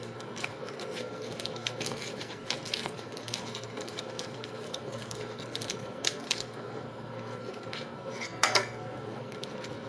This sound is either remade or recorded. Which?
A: remade